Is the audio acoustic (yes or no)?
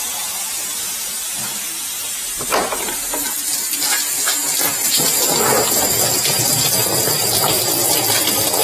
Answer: yes